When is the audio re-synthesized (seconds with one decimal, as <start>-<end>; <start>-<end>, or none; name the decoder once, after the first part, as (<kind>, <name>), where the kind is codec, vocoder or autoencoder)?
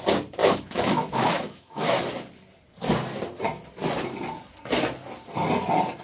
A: 0.4-2.0 (autoencoder, DAC-VAE)